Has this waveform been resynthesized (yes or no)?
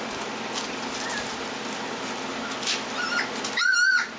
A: no